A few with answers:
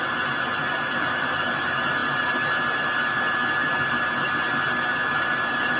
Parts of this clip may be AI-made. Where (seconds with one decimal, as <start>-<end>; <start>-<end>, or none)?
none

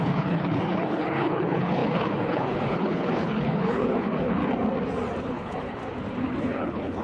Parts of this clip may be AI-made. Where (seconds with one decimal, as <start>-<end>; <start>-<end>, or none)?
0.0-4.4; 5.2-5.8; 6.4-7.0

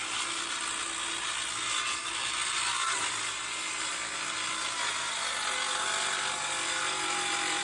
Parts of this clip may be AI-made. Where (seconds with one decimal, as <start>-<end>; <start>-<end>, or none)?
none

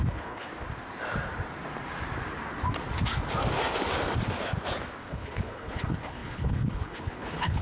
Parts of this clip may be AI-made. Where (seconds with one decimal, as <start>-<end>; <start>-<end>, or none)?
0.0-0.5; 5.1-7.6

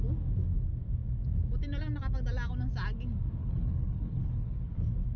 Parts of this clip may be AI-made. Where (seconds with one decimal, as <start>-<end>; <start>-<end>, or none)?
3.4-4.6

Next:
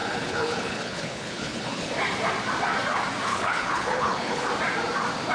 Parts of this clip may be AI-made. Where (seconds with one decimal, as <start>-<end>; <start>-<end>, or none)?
0.0-1.9; 3.3-4.5